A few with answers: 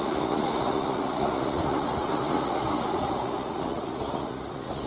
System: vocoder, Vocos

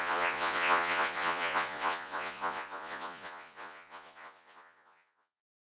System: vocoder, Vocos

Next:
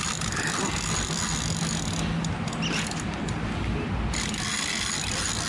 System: none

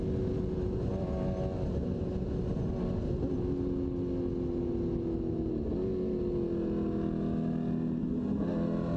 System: none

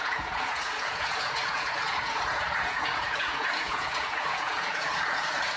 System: vocoder, Vocos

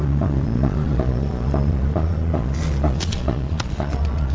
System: vocoder, Vocos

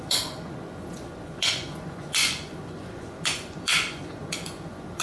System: vocoder, Vocos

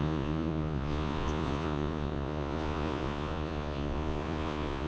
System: vocoder, Vocos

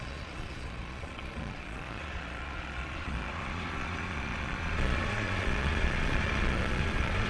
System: vocoder, Vocos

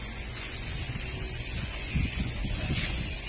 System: vocoder, Vocos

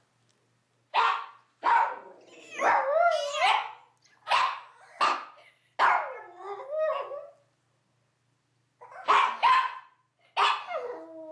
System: none